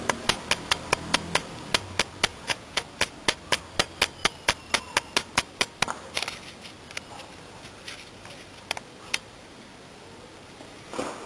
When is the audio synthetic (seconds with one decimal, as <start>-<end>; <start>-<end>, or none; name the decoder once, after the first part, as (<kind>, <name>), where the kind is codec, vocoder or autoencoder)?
2.3-2.8 (vocoder, Vocos)